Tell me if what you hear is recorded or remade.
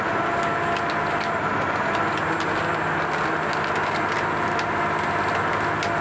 recorded